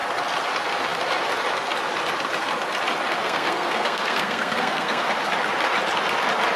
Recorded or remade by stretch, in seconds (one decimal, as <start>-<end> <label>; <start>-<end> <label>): 0.0-3.2 recorded; 3.2-5.1 remade; 5.1-6.6 recorded